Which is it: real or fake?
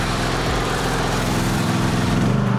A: fake